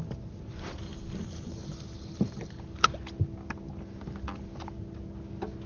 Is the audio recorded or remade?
recorded